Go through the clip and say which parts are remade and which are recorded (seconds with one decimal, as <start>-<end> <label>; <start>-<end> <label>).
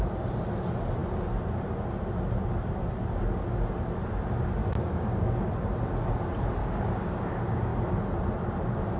0.0-4.6 recorded; 4.6-5.5 remade; 5.5-6.6 recorded; 6.6-7.3 remade; 7.3-9.0 recorded